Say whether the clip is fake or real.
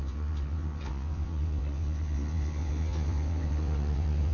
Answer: fake